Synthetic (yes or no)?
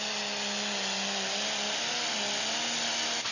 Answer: no